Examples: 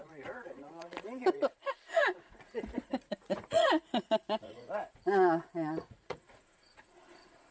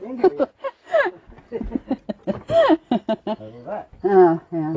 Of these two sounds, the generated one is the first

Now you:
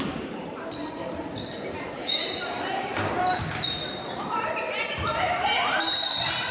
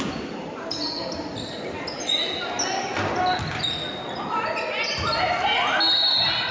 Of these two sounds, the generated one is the first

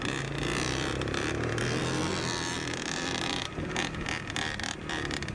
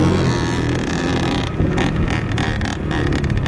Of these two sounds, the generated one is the first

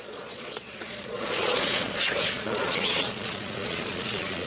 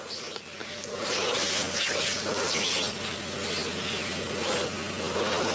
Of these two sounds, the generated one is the first